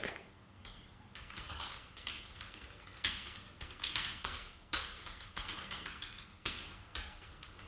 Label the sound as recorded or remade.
remade